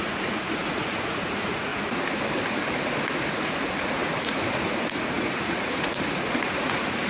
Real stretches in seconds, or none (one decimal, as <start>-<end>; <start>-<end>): 1.7-3.1